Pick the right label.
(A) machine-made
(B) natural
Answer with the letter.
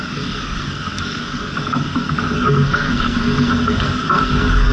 A